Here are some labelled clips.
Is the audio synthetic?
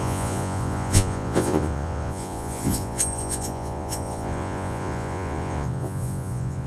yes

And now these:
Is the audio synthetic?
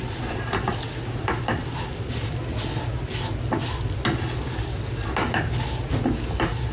no